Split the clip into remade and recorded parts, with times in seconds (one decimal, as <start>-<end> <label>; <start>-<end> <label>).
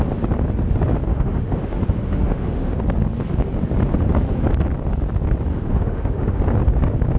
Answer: 0.0-1.1 recorded; 1.1-2.8 remade; 2.8-5.5 recorded; 5.5-6.4 remade; 6.4-7.2 recorded